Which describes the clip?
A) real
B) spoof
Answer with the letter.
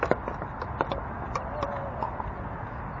A